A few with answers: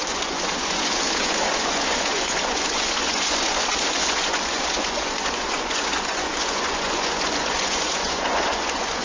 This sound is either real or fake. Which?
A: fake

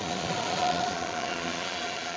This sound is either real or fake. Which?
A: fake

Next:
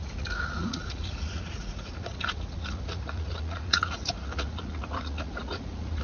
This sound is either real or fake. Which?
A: fake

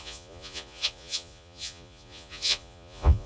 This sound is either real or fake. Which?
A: fake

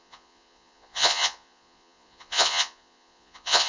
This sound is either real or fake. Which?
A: fake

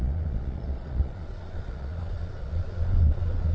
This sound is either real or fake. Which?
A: fake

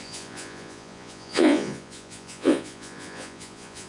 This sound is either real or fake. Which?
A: fake